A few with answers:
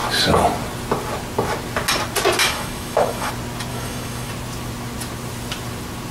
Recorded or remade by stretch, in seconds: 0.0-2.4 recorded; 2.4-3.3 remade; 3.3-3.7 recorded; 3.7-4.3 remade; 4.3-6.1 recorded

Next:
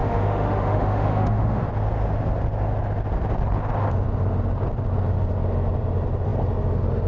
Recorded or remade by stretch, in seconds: 0.0-1.6 remade; 1.6-7.1 recorded

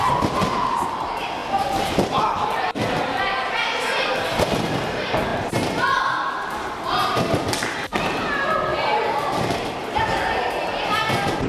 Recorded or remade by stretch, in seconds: 0.0-11.5 recorded

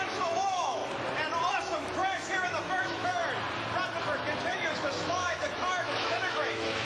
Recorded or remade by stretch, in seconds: 0.0-0.8 remade; 0.8-1.5 recorded; 1.5-3.2 remade; 3.2-4.4 recorded; 4.4-6.8 remade

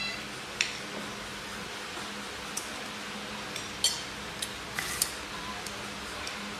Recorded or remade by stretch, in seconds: 0.0-6.6 recorded

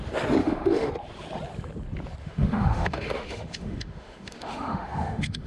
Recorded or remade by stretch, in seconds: 0.0-0.4 recorded; 0.4-0.9 remade; 0.9-2.2 recorded; 2.2-5.5 remade

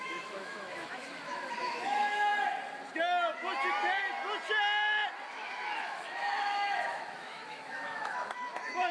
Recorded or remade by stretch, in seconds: 0.0-2.3 remade; 2.3-5.3 recorded; 5.3-8.9 remade